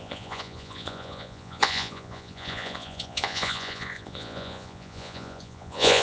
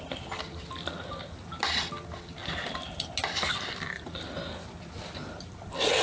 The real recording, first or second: second